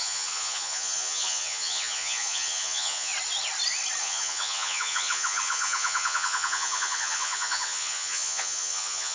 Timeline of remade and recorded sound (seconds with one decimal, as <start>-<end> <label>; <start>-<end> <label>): 0.0-3.1 remade; 3.1-4.0 recorded; 4.0-9.1 remade